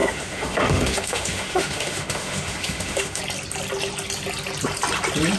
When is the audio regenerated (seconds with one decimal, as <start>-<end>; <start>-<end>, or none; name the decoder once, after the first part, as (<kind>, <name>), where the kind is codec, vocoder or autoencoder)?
0.0-3.2 (autoencoder, DAC-VAE)